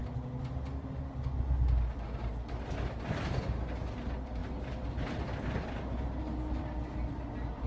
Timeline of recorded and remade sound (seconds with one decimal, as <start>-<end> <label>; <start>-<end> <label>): 0.0-7.7 recorded